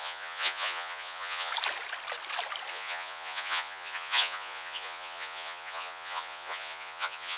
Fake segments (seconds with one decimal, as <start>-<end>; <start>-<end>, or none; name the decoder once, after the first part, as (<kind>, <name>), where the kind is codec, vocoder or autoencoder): 0.0-1.5 (vocoder, Vocos); 2.7-7.4